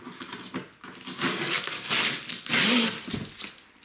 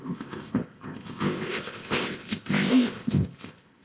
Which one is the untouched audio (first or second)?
first